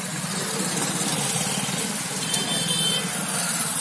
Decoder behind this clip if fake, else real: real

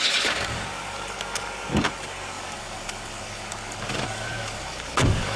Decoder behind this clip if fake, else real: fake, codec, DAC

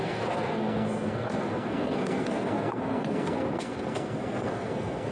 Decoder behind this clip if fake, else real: fake, codec, SNAC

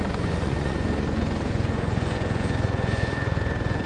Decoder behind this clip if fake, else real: fake, vocoder, Vocos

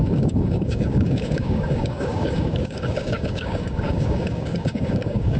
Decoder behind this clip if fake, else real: fake, codec, DAC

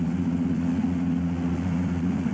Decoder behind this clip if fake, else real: fake, vocoder, Vocos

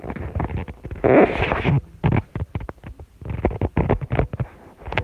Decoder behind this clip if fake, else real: real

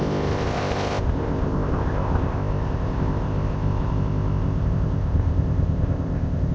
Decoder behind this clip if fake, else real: fake, codec, ZipCodec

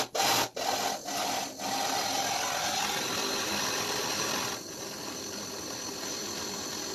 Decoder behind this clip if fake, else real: real